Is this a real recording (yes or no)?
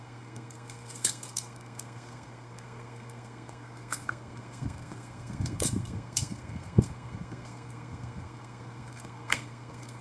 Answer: no